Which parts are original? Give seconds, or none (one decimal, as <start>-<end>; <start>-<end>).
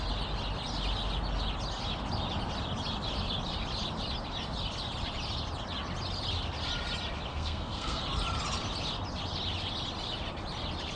0.0-7.3; 8.0-11.0